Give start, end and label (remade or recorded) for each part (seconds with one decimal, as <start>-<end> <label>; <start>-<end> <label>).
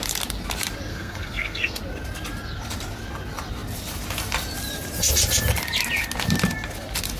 0.0-0.9 recorded; 0.9-1.8 remade; 1.8-7.2 recorded